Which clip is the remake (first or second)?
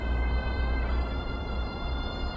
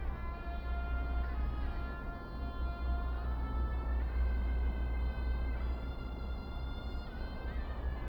first